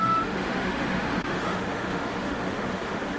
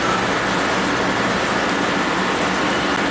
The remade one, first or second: first